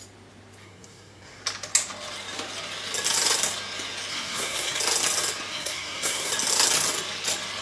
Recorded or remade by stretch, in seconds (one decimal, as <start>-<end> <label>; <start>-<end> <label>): 0.0-0.6 recorded; 0.6-1.4 remade; 1.4-4.1 recorded; 4.1-4.8 remade; 4.8-5.5 recorded; 5.5-6.3 remade; 6.3-7.6 recorded